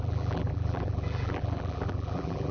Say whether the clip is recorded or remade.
remade